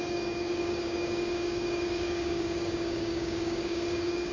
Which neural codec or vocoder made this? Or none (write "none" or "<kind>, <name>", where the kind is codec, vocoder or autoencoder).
codec, DAC